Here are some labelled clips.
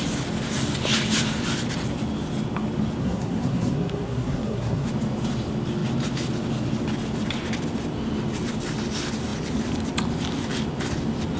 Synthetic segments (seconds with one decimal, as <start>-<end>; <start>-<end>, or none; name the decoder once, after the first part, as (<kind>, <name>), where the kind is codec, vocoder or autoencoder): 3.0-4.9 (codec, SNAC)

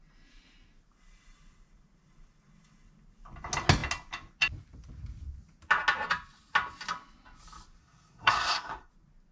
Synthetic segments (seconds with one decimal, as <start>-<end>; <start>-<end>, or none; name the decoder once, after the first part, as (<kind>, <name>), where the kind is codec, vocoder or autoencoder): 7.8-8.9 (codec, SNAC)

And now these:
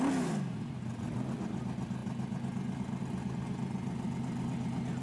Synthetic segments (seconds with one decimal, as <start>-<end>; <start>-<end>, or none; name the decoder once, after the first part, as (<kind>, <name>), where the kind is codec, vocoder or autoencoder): none

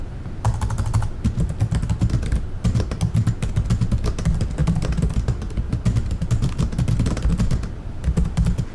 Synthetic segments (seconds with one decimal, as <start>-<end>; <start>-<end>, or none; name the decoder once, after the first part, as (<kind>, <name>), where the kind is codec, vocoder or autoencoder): none

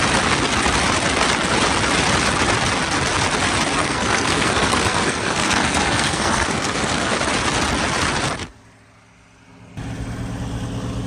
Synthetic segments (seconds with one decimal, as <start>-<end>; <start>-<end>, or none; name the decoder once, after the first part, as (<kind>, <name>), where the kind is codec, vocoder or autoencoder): 3.8-7.2 (codec, SNAC)

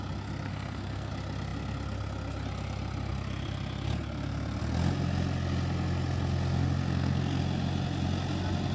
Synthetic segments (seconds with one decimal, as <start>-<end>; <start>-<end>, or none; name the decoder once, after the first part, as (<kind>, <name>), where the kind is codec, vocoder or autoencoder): 0.5-1.1 (codec, SNAC); 6.8-7.4